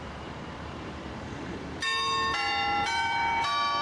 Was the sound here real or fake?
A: fake